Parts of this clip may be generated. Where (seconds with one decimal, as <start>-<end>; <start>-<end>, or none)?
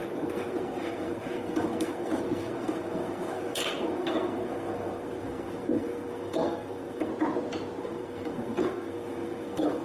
0.0-7.1; 7.8-9.8